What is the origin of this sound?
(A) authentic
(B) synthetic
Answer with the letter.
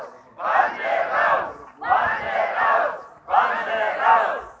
A